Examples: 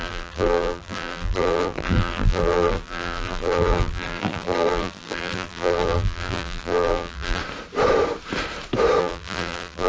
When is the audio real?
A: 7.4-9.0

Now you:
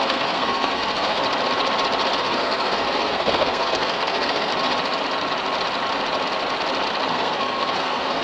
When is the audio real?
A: 1.2-2.2; 4.5-7.1

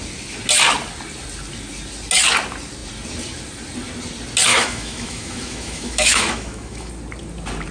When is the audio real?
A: 0.0-4.5; 6.9-7.7

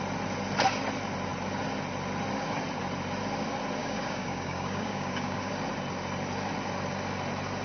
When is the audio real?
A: 0.0-3.8; 5.5-7.6